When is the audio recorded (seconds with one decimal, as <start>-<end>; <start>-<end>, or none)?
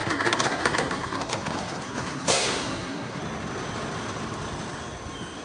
3.2-5.4